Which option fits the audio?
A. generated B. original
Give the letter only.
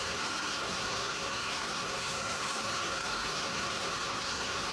A